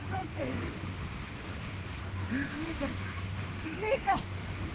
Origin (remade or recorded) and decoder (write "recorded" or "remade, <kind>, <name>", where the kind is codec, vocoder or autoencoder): remade, autoencoder, DAC-VAE